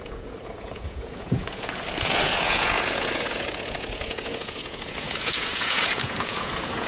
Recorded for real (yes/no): no